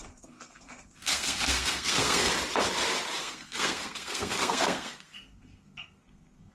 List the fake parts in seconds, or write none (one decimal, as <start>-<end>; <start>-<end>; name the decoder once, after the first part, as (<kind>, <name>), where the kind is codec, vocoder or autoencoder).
0.0-2.3 (codec, SNAC); 3.2-6.5